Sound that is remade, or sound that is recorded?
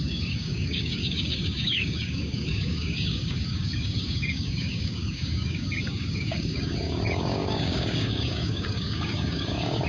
remade